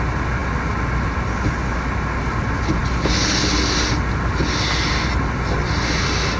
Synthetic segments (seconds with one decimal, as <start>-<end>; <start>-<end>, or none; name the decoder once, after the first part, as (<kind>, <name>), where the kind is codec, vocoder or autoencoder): none